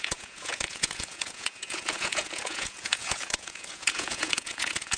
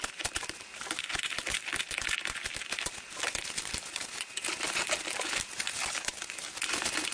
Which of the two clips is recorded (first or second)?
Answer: second